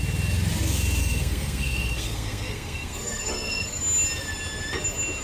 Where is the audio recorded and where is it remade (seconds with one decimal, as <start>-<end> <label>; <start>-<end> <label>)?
0.0-1.0 recorded; 1.0-3.8 remade; 3.8-5.2 recorded